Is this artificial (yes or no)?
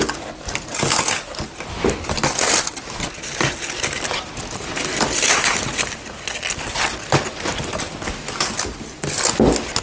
no